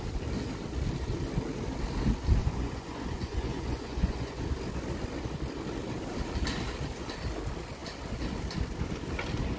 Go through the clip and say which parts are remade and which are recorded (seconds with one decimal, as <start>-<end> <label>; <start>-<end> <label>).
0.0-2.4 recorded; 2.4-4.4 remade; 4.4-9.6 recorded

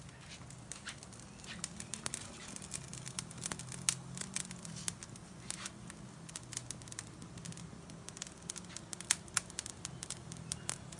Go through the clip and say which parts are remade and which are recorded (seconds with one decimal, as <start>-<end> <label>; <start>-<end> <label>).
0.0-11.0 recorded

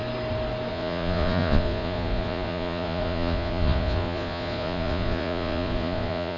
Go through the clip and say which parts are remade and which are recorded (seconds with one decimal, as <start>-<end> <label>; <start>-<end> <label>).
0.0-0.7 recorded; 0.7-6.4 remade